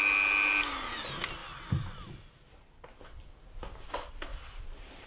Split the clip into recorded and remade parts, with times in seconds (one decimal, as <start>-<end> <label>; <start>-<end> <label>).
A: 0.0-5.1 recorded